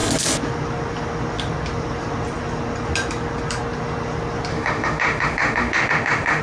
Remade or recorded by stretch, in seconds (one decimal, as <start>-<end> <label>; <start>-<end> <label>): 0.0-4.5 recorded; 4.5-6.4 remade